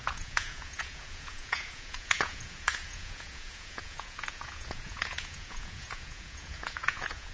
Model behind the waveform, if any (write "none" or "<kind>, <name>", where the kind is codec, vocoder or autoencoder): vocoder, Vocos